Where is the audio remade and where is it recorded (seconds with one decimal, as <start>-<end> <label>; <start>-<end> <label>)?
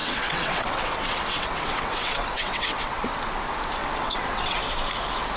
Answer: 0.0-3.2 remade; 3.2-3.8 recorded; 3.8-4.6 remade; 4.6-5.4 recorded